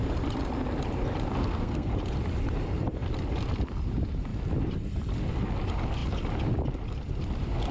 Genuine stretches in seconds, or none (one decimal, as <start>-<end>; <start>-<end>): 0.0-1.4; 1.9-7.7